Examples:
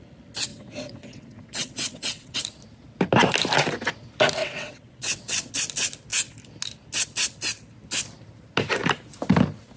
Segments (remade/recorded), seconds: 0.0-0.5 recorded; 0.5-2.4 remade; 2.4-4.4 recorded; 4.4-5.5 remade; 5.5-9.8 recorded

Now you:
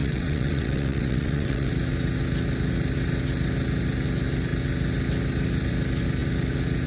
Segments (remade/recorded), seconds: 0.0-1.7 remade; 1.7-6.9 recorded

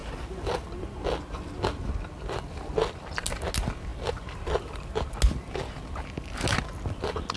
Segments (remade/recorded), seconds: 0.0-7.4 recorded

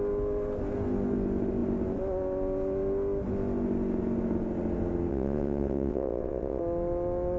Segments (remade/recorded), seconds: 0.0-5.1 recorded; 5.1-6.6 remade; 6.6-7.4 recorded

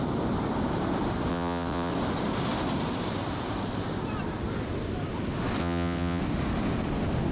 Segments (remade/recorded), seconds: 0.0-1.3 recorded; 1.3-1.9 remade; 1.9-5.6 recorded; 5.6-6.2 remade; 6.2-7.3 recorded